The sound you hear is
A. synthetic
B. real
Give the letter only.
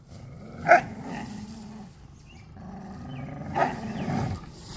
B